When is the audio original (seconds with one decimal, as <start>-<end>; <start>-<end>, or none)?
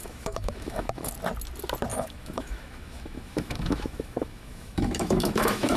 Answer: 1.1-1.9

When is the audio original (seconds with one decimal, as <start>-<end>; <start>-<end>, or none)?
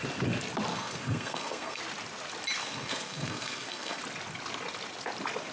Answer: 0.0-0.7; 1.8-2.6; 4.0-5.5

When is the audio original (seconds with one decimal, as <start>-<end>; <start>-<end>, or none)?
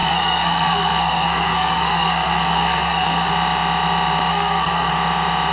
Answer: 3.3-4.3; 4.9-5.5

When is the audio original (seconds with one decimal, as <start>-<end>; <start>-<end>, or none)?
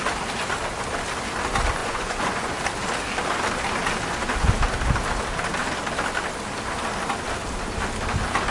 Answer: 0.0-1.8; 2.5-8.5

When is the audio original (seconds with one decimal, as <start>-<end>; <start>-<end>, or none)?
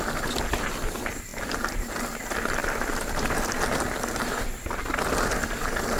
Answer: 0.0-1.3; 2.2-2.6; 4.4-6.0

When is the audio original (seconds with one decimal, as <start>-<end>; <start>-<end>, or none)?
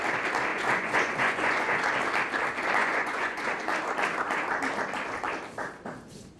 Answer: 0.0-0.5; 1.8-2.8; 3.5-6.4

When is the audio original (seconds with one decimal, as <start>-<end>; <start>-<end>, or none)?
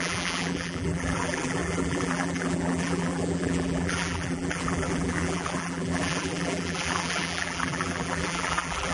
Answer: none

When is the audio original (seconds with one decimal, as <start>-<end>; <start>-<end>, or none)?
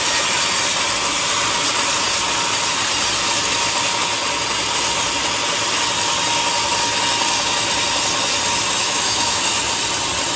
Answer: 0.0-8.8; 9.4-10.4